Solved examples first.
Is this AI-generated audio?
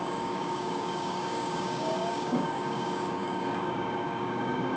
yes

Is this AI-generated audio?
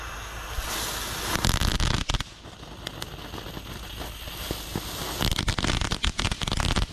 no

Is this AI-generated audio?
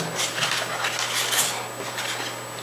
no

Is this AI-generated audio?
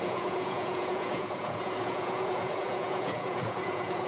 yes